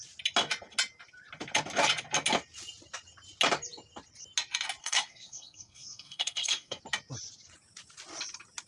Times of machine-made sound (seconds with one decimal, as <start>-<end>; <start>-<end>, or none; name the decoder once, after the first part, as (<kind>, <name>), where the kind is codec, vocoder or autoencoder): 4.8-6.8 (codec, SNAC)